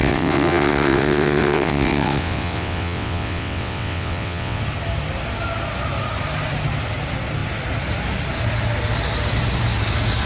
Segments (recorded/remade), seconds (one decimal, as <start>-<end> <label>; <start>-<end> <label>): 0.0-4.6 remade; 4.6-10.3 recorded